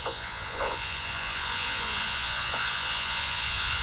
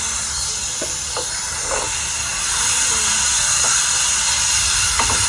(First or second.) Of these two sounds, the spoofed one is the first